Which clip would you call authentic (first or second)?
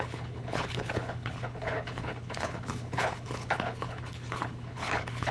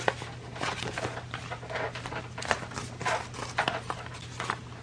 second